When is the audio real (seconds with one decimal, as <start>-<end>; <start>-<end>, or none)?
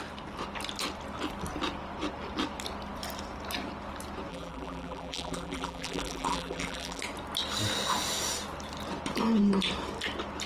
0.0-4.3; 7.0-10.5